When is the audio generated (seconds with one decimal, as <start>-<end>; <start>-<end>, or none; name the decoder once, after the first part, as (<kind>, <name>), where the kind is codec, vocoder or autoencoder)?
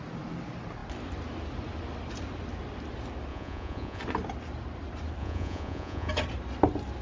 3.3-4.0 (vocoder, Vocos); 5.2-6.1